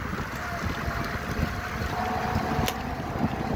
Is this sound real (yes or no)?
yes